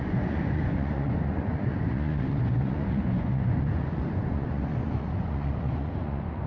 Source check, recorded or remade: remade